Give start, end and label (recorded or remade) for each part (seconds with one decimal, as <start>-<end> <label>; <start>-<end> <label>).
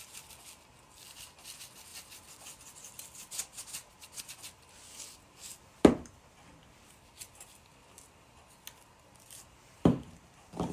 0.0-10.7 recorded